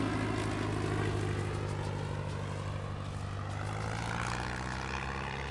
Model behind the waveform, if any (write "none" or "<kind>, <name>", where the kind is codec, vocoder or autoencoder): none